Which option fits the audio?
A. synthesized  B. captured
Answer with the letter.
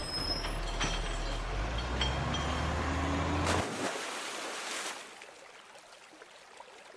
B